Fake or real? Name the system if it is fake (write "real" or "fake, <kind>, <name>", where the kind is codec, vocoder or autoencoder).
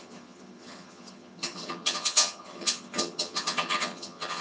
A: fake, vocoder, HiFi-GAN